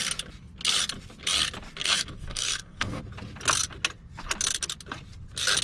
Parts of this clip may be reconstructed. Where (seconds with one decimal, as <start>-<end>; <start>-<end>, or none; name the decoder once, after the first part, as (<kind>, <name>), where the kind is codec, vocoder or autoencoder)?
1.8-3.0 (codec, SNAC)

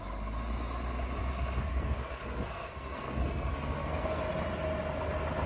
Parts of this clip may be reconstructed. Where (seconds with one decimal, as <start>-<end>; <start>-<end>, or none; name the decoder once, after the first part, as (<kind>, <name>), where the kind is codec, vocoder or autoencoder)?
1.2-4.2 (codec, SNAC)

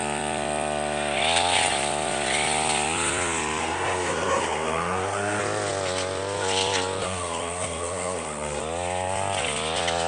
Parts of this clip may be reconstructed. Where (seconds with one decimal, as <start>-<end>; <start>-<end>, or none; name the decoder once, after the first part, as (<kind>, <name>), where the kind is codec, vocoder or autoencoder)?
3.6-5.4 (codec, SNAC); 7.0-8.6

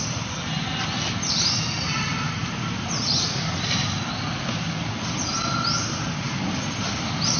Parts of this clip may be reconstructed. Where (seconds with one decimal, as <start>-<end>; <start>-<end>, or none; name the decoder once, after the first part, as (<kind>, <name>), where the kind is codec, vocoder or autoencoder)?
none